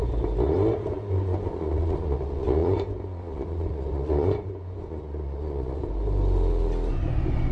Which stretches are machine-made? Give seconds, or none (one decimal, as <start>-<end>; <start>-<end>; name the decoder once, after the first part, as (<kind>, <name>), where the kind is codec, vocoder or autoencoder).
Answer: 0.7-6.0 (vocoder, Vocos); 6.9-7.5